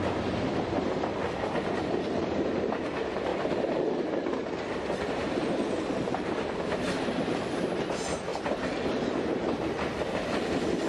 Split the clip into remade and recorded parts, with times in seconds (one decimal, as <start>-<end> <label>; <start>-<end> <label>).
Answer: 0.0-3.3 remade; 3.3-5.1 recorded; 5.1-8.3 remade; 8.3-9.3 recorded; 9.3-9.9 remade; 9.9-10.9 recorded